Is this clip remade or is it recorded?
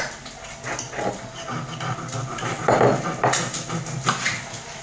recorded